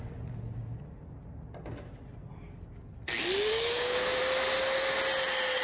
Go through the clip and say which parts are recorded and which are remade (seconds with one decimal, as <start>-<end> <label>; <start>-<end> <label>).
0.0-3.5 recorded; 3.5-4.2 remade; 4.2-5.6 recorded